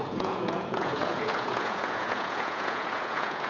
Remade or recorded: remade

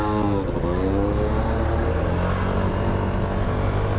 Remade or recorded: recorded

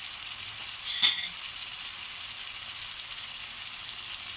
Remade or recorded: recorded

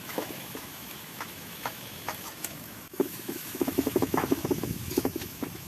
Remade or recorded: remade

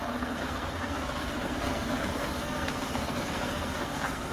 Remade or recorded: remade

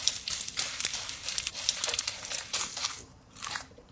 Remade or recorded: remade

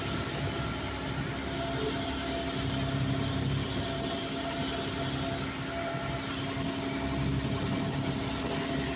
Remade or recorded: recorded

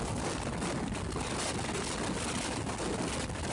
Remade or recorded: recorded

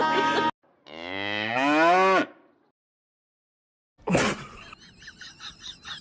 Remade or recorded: recorded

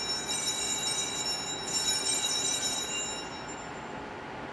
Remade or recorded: recorded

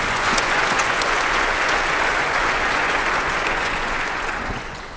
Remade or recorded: remade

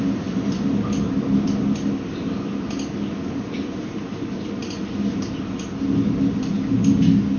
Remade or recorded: recorded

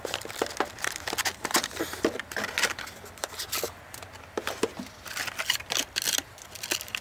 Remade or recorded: recorded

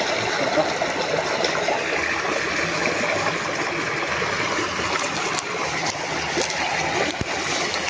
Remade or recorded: recorded